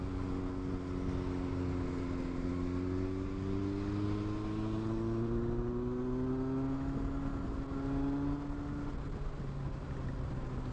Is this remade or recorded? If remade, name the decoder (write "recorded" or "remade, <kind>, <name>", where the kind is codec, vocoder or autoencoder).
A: recorded